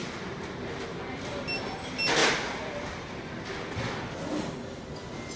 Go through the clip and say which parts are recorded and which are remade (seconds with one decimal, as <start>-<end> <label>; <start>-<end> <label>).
0.0-5.4 recorded